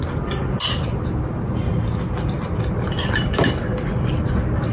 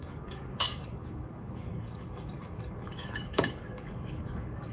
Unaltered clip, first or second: first